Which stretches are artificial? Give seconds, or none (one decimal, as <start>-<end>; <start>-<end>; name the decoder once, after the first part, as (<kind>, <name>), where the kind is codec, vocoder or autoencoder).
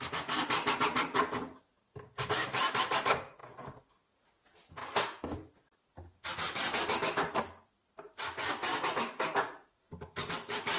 none